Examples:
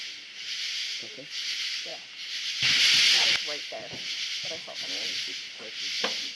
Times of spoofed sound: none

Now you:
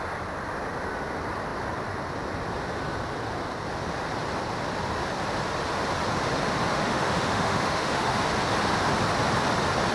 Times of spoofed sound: 6.7-8.2 (autoencoder, DAC-VAE)

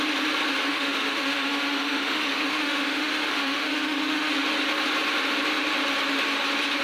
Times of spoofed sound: 0.7-4.3 (autoencoder, DAC-VAE)